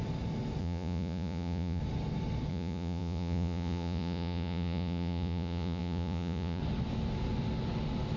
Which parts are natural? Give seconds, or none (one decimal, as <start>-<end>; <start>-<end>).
0.0-0.6; 1.8-2.5; 6.6-8.2